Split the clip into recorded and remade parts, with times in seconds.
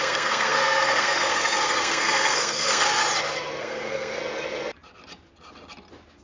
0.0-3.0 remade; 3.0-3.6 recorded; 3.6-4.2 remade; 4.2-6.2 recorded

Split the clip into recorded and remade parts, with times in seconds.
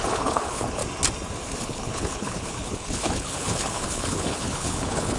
0.0-0.8 remade; 0.8-1.6 recorded; 1.6-5.2 remade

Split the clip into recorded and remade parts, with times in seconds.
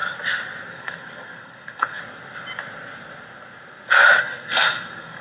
0.0-0.7 recorded; 0.7-2.0 remade; 2.0-4.2 recorded; 4.2-5.2 remade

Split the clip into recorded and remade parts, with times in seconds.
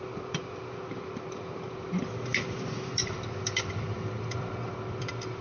0.0-5.4 remade